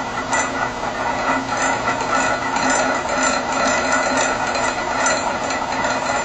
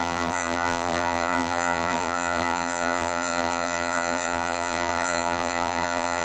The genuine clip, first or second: first